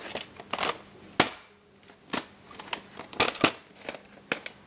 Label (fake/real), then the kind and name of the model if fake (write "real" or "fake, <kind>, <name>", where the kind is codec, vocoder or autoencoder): real